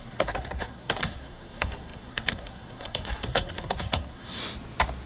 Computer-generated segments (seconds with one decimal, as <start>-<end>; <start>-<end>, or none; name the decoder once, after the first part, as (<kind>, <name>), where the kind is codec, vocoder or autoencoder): 0.0-4.4 (codec, SNAC)